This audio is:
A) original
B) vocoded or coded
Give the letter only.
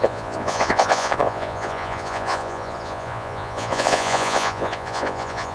B